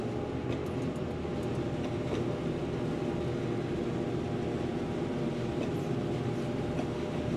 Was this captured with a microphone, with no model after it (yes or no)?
yes